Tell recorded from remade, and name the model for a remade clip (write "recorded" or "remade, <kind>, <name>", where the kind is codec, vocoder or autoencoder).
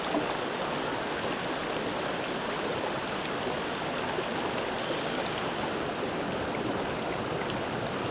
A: recorded